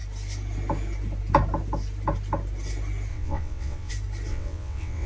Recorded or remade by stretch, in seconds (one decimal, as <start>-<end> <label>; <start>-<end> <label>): 0.0-3.1 recorded; 3.1-3.9 remade; 3.9-4.3 recorded; 4.3-5.1 remade